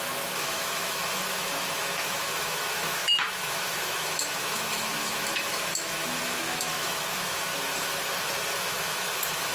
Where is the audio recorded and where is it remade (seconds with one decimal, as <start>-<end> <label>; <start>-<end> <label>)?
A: 0.0-7.5 remade; 7.5-8.6 recorded; 8.6-9.5 remade